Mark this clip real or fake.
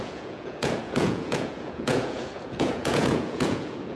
fake